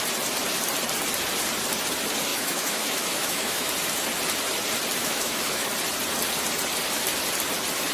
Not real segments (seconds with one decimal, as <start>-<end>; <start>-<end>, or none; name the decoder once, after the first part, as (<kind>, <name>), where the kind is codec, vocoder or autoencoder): 2.3-3.7 (autoencoder, DAC-VAE); 5.0-5.7